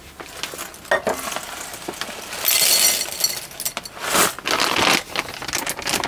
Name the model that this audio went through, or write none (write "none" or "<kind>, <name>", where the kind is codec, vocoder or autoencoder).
none